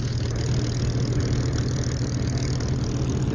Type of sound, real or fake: real